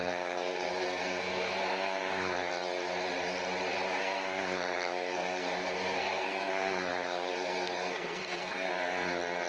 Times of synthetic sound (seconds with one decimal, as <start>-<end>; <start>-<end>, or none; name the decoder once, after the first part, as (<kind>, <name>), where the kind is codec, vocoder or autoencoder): 0.0-2.5 (codec, SNAC); 4.0-8.7

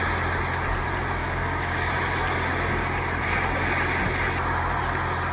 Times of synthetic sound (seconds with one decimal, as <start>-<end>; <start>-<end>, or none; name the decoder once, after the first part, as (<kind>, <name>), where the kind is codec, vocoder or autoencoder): 1.2-1.9 (codec, DAC)

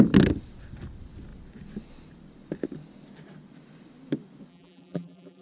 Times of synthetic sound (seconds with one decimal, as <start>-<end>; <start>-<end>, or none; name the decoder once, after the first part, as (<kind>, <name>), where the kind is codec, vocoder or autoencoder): 4.5-5.4 (vocoder, BigVGAN v2)

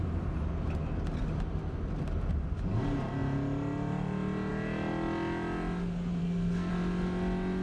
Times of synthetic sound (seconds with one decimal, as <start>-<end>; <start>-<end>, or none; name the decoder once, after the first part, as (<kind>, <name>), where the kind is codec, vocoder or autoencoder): 6.2-6.7 (codec, SNAC)

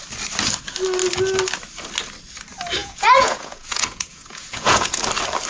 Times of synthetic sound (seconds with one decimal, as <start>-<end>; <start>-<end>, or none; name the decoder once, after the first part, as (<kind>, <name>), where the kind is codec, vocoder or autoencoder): 2.8-5.0 (vocoder, Vocos)